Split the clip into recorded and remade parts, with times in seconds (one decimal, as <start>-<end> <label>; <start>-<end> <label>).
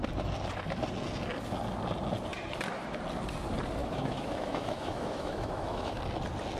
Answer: 0.0-3.8 recorded; 3.8-6.0 remade; 6.0-6.6 recorded